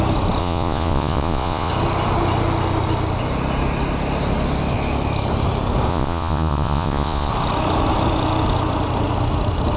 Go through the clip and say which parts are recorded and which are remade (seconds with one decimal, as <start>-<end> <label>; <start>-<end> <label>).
0.0-0.4 recorded; 0.4-1.7 remade; 1.7-5.9 recorded; 5.9-7.3 remade; 7.3-9.8 recorded